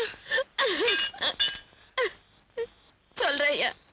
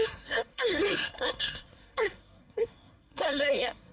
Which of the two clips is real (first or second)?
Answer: first